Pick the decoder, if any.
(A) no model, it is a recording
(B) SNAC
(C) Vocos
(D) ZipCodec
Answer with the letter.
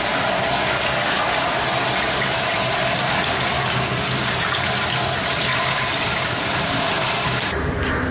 A